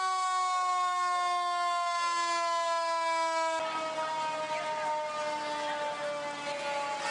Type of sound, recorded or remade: recorded